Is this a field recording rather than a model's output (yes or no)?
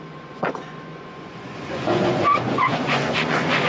no